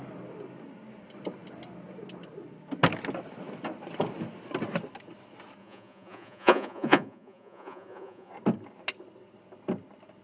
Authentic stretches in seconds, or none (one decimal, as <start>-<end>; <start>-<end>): 0.0-5.6; 8.3-10.2